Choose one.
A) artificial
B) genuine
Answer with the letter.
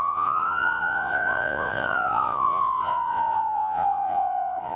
A